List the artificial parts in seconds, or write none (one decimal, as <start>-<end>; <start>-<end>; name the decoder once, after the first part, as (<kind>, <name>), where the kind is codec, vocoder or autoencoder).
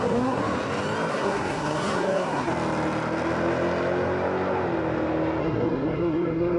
0.0-0.4 (codec, SNAC); 1.1-2.5; 5.4-6.6